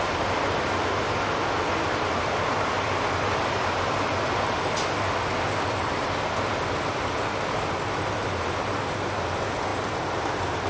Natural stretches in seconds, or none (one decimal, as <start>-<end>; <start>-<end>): 0.0-9.7